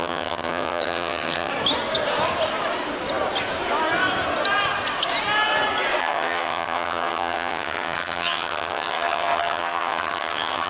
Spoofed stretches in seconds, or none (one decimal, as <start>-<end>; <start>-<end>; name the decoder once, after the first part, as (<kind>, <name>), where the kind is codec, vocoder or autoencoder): 0.0-1.5 (vocoder, HiFi-GAN); 6.0-10.7